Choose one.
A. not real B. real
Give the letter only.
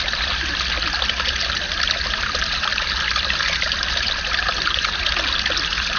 B